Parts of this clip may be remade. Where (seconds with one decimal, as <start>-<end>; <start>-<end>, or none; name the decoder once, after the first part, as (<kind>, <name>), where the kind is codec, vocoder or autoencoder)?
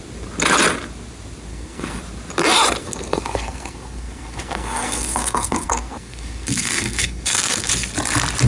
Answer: 1.5-2.0 (codec, SNAC); 2.8-7.7